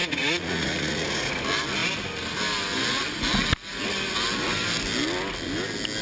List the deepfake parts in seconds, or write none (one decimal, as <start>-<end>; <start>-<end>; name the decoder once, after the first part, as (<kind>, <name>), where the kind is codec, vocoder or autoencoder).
0.0-1.3 (vocoder, Vocos)